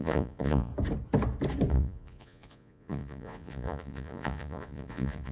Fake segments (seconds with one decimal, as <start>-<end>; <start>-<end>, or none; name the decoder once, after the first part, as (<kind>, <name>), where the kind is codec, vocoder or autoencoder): 0.0-0.7 (vocoder, Vocos); 1.7-5.3